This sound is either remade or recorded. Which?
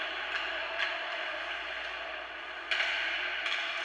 recorded